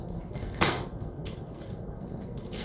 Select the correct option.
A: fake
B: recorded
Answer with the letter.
A